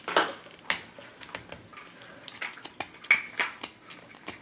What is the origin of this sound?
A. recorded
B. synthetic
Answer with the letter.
A